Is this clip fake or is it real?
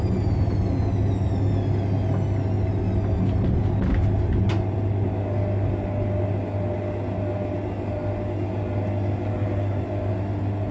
real